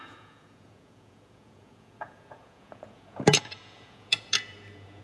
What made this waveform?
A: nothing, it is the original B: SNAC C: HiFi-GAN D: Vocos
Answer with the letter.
D